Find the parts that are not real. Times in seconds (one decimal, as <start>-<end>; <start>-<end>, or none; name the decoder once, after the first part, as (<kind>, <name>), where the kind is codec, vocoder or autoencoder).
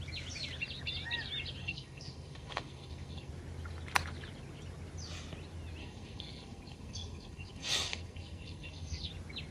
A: 1.6-3.3 (codec, SNAC); 5.8-9.1